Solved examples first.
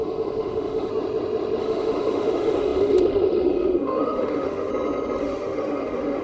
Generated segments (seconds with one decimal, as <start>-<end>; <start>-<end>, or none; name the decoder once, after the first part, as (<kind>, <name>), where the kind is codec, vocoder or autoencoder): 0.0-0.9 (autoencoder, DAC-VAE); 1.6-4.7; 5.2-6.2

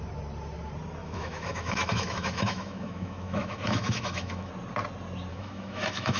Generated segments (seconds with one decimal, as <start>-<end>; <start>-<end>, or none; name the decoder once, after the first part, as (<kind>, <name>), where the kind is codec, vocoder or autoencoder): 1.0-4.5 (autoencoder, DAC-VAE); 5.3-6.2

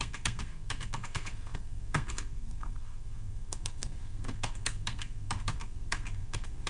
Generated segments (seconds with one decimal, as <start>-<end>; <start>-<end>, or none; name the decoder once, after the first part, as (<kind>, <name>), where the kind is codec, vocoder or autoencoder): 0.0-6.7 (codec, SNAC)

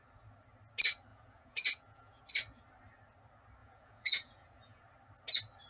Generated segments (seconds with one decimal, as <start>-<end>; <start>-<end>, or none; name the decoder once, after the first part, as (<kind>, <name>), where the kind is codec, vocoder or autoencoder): 1.1-2.2 (vocoder, Vocos); 3.6-4.8

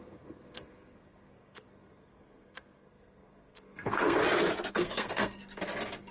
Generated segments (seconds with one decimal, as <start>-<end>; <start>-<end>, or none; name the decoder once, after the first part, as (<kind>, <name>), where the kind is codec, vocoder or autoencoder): 0.0-4.2 (codec, SNAC); 4.7-5.4

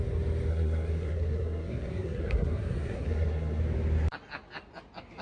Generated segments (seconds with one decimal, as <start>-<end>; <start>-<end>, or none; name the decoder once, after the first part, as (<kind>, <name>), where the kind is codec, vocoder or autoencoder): 0.5-3.6 (codec, SNAC)

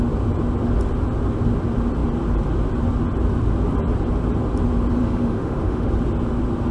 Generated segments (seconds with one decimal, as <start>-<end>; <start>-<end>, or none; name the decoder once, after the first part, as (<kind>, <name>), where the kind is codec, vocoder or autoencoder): 5.0-5.9 (autoencoder, DAC-VAE)